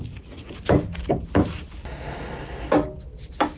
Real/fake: real